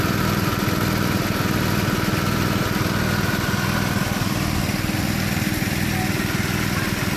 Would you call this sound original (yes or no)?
yes